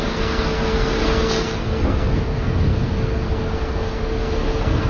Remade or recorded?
remade